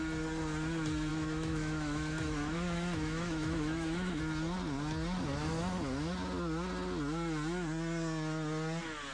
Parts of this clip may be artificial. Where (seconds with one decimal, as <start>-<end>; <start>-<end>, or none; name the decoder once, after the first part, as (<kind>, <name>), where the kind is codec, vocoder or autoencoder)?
1.1-4.2 (autoencoder, DAC-VAE)